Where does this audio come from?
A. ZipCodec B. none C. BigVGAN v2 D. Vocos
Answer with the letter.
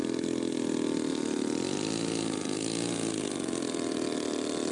B